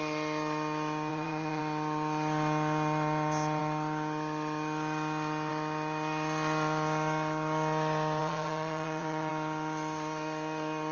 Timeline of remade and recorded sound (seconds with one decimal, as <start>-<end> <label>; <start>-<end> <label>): 0.0-1.1 recorded; 1.1-1.6 remade; 1.6-8.2 recorded; 8.2-9.3 remade; 9.3-10.9 recorded